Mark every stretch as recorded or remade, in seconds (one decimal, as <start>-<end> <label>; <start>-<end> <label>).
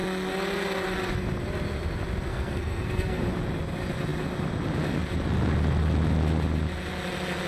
0.0-2.3 recorded; 2.3-3.2 remade; 3.2-7.5 recorded